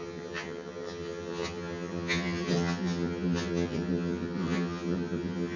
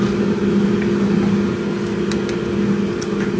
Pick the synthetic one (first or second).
first